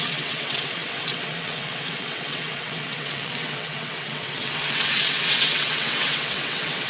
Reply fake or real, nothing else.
fake